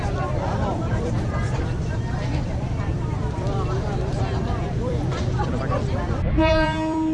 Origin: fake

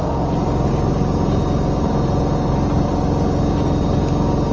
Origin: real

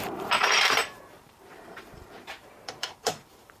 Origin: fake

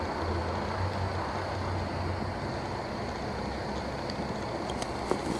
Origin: real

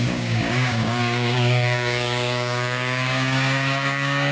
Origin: fake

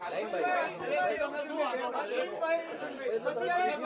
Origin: real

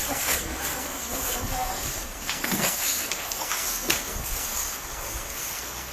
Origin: fake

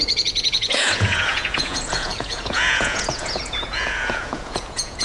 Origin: fake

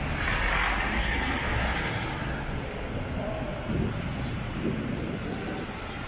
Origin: real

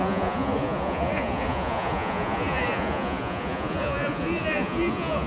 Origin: fake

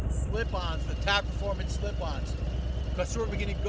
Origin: real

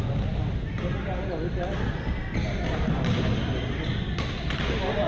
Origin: real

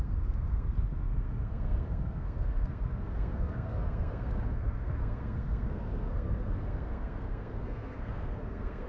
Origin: fake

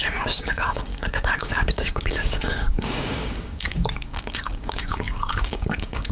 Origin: fake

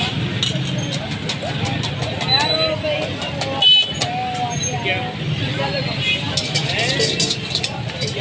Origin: real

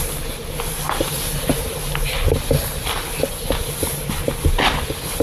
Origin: real